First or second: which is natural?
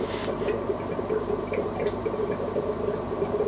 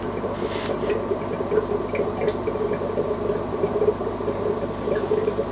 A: second